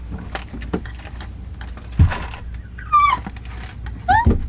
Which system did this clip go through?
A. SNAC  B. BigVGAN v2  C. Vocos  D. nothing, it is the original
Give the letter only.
D